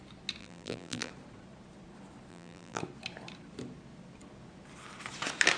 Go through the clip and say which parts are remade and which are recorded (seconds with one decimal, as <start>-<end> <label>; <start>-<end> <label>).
0.0-0.4 recorded; 0.4-1.1 remade; 1.1-2.3 recorded; 2.3-2.8 remade; 2.8-5.6 recorded